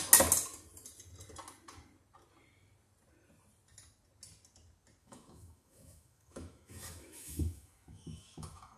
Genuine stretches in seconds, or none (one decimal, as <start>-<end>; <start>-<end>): 0.0-5.0